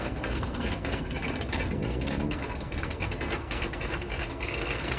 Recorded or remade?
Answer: remade